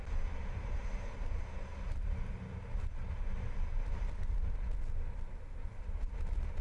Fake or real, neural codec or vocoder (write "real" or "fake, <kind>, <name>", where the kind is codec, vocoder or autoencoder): real